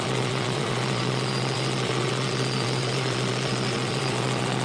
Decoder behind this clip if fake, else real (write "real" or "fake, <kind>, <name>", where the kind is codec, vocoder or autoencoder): fake, vocoder, Vocos